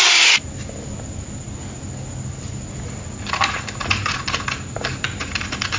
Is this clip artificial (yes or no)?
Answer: no